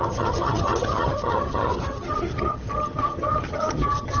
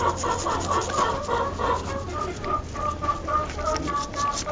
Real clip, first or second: second